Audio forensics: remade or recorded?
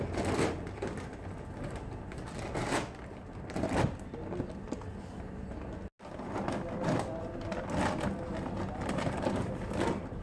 recorded